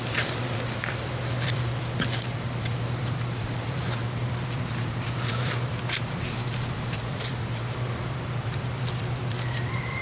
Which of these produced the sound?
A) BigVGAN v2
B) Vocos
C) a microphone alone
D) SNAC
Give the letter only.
A